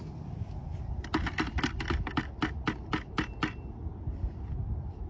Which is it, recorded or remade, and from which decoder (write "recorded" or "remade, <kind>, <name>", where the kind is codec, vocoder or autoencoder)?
recorded